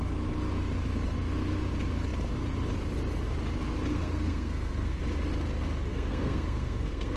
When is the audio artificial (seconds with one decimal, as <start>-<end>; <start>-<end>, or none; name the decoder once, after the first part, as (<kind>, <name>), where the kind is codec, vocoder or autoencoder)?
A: 3.9-5.0 (codec, SNAC); 5.9-7.2